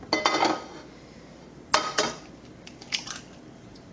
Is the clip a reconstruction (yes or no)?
no